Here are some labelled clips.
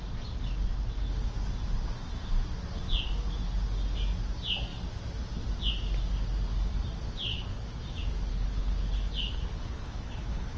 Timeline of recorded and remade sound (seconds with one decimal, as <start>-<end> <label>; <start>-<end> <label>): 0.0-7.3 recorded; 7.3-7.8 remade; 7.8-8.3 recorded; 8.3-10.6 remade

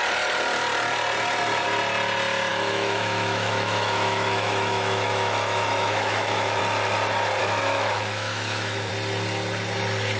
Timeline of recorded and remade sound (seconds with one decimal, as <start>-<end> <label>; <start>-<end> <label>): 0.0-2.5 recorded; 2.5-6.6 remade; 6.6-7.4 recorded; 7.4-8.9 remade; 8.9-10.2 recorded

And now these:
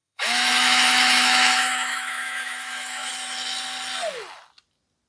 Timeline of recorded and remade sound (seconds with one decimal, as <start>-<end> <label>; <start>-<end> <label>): 0.0-3.1 remade; 3.1-5.1 recorded

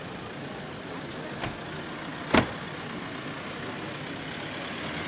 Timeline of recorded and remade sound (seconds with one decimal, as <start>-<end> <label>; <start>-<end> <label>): 0.0-5.1 recorded

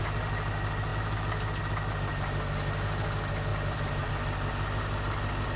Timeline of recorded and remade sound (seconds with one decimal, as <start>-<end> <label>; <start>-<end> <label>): 0.0-3.5 recorded; 3.5-4.1 remade; 4.1-5.6 recorded

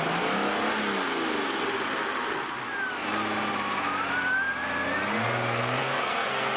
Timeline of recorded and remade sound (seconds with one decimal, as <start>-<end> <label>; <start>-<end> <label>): 0.0-5.8 recorded; 5.8-6.6 remade

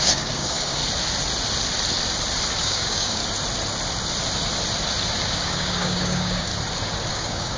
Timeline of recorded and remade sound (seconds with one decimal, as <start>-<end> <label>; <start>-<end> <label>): 0.0-0.8 remade; 0.8-2.6 recorded; 2.6-3.2 remade; 3.2-5.3 recorded; 5.3-6.5 remade; 6.5-7.1 recorded; 7.1-7.6 remade

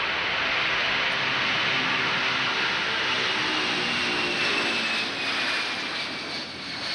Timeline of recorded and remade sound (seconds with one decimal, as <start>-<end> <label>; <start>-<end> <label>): 0.0-6.9 recorded